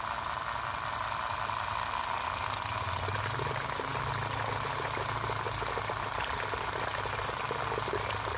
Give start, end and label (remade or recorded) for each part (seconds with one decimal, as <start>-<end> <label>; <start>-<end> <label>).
0.0-8.4 recorded